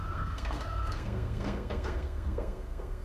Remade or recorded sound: remade